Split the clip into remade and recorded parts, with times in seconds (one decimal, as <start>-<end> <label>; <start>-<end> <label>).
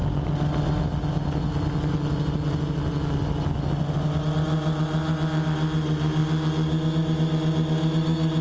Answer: 0.0-8.4 recorded